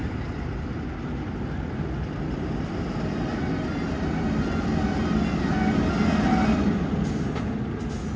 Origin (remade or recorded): recorded